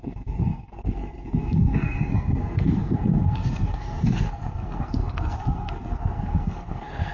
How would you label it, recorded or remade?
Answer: remade